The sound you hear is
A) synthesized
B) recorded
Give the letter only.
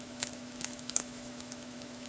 A